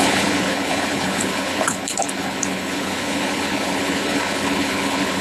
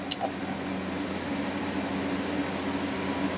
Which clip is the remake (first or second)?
first